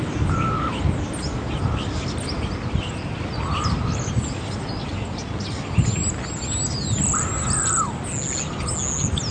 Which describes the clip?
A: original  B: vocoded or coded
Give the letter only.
A